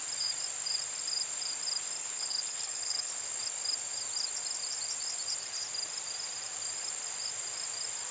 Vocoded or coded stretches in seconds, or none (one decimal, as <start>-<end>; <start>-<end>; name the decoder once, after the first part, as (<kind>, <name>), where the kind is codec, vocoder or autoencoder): 2.0-3.1 (codec, HILCodec)